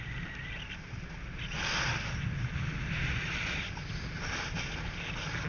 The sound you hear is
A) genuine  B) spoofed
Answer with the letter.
A